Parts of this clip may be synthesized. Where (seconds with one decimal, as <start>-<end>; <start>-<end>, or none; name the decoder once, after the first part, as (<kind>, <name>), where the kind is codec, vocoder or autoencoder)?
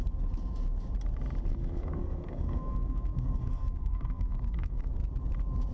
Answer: 1.5-4.9 (codec, SNAC)